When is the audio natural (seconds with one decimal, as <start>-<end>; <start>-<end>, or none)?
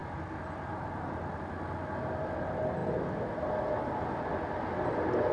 0.0-5.3